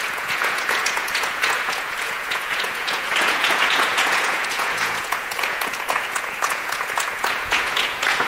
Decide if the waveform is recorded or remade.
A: remade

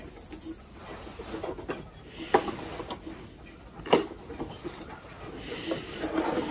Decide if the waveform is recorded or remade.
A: recorded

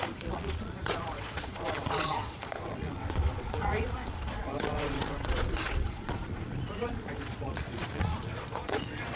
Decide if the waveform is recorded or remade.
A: remade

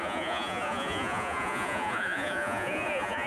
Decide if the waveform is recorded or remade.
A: remade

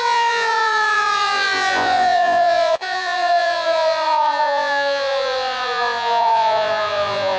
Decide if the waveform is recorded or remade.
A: remade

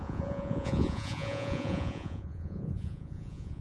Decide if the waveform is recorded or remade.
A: remade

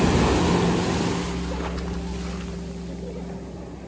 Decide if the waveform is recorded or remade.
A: recorded